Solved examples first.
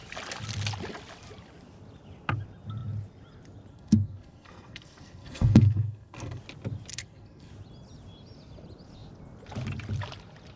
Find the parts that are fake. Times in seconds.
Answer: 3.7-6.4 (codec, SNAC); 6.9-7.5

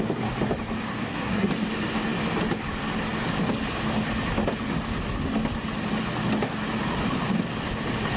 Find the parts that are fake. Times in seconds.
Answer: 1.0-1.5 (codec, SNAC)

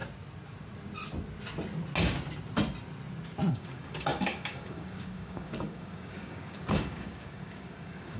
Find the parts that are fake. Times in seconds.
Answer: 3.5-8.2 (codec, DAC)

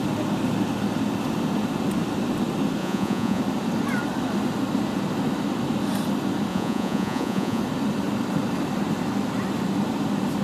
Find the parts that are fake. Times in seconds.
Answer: 2.8-3.4 (vocoder, Vocos); 6.5-7.6

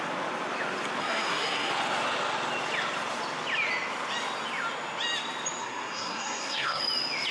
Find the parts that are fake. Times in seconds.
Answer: 1.0-1.7 (codec, SNAC); 5.6-6.8